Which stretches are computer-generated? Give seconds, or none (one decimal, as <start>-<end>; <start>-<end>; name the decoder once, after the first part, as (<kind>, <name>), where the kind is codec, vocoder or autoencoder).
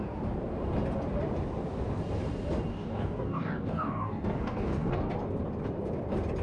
2.7-5.1 (codec, DAC)